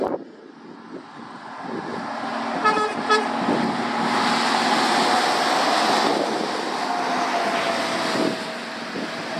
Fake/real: real